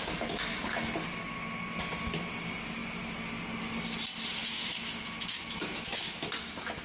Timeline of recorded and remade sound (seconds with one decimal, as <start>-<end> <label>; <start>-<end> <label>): 0.0-4.4 recorded; 4.4-6.8 remade